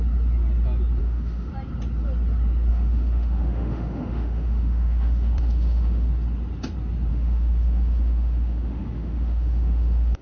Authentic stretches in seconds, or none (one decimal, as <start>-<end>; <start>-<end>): 0.0-1.0; 1.5-2.7; 6.1-7.1